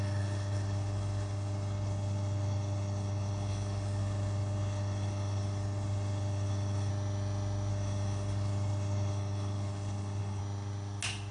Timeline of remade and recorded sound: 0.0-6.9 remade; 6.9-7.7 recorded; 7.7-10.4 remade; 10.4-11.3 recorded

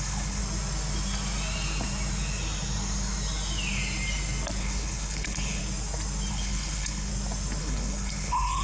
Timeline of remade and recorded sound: 0.0-0.4 remade; 0.4-4.6 recorded; 4.6-5.6 remade; 5.6-6.3 recorded; 6.3-7.1 remade; 7.1-7.6 recorded; 7.6-8.6 remade

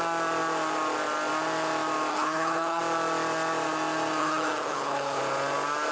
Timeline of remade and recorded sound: 0.0-2.1 recorded; 2.1-2.8 remade; 2.8-4.2 recorded; 4.2-5.2 remade; 5.2-5.9 recorded

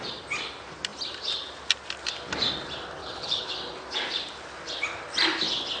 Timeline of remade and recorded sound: 0.0-3.0 recorded; 3.0-3.5 remade; 3.5-5.8 recorded

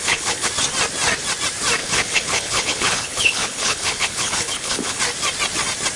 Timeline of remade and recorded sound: 0.0-0.5 remade; 0.5-1.8 recorded; 1.8-5.0 remade; 5.0-6.0 recorded

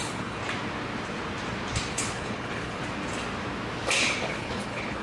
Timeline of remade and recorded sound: 0.0-0.4 remade; 0.4-1.9 recorded; 1.9-2.8 remade; 2.8-4.3 recorded; 4.3-5.0 remade